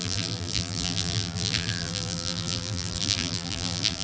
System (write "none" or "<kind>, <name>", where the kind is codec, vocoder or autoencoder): vocoder, BigVGAN v2